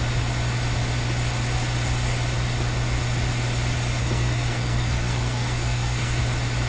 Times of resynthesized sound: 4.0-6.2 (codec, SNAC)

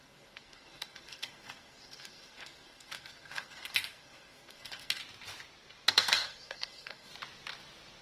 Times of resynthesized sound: 0.0-5.0 (codec, SNAC); 5.9-7.1

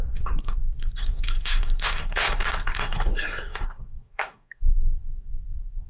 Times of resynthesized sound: 0.0-5.9 (codec, SNAC)

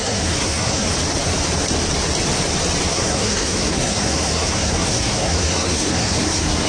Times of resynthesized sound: 0.0-0.9 (codec, SNAC); 2.9-6.7